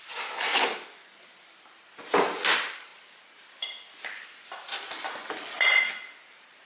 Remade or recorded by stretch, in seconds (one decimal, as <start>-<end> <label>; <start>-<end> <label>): 0.0-6.7 recorded